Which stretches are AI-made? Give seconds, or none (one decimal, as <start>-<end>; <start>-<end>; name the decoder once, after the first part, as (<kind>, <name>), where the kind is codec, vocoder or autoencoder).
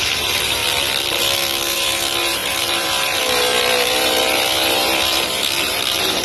0.0-0.6 (vocoder, BigVGAN v2); 1.7-6.2